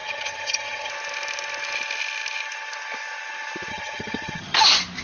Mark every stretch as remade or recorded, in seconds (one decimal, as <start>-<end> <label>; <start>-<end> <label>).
0.0-0.9 remade; 0.9-3.7 recorded; 3.7-4.6 remade; 4.6-5.0 recorded